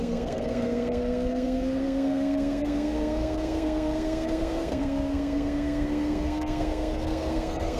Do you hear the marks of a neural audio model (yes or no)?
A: yes